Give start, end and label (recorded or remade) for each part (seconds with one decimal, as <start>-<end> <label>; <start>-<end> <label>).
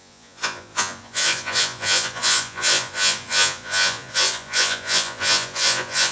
0.0-6.1 remade